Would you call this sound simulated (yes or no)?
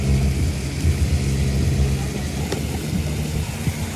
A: no